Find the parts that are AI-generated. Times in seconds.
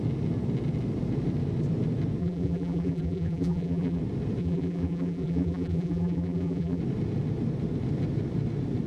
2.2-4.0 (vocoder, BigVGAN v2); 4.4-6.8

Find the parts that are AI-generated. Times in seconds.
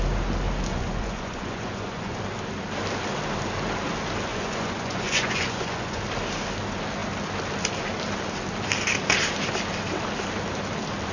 0.7-2.2 (vocoder, Vocos); 4.3-6.0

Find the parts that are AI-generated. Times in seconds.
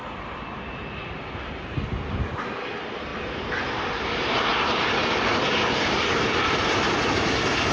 0.0-1.0 (vocoder, BigVGAN v2); 3.1-3.8; 4.5-5.1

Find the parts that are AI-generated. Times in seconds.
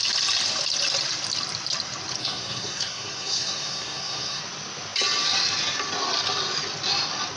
2.2-4.4 (codec, SNAC)